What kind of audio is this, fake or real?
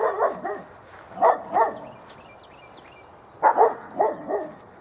real